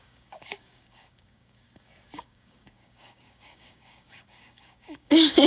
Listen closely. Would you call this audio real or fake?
fake